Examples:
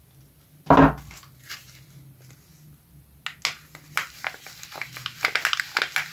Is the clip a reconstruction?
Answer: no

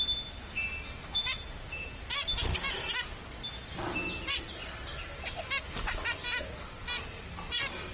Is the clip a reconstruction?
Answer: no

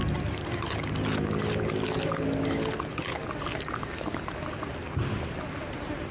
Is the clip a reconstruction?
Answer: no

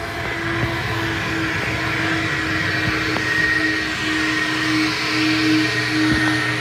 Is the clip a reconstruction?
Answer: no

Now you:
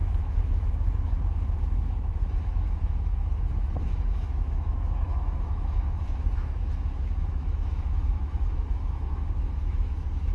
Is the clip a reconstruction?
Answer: yes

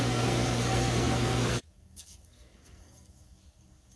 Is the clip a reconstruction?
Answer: yes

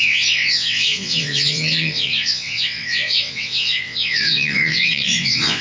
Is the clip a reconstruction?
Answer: yes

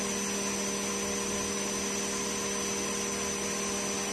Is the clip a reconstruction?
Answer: no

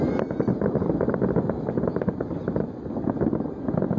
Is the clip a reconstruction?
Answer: no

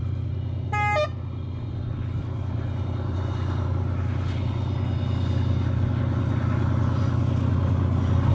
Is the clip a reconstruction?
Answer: no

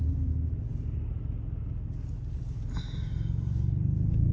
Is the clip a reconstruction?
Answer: no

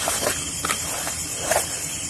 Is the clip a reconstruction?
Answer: no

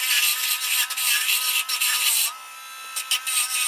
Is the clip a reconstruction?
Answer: no